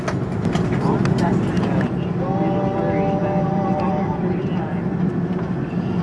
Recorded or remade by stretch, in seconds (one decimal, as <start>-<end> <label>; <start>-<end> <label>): 0.0-6.0 recorded